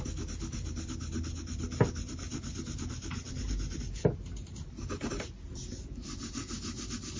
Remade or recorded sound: recorded